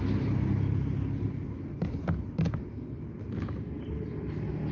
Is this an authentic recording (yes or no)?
yes